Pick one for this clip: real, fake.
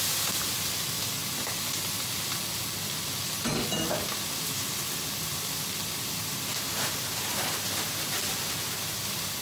real